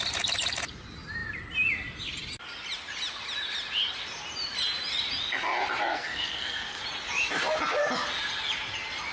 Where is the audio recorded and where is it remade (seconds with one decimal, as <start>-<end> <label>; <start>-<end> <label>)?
0.0-5.9 recorded; 5.9-6.8 remade; 6.8-9.1 recorded